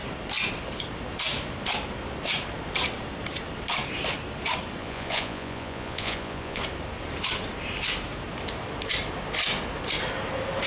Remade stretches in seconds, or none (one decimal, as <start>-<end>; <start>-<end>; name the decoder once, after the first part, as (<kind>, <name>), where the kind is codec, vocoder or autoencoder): 4.8-6.6 (vocoder, Vocos)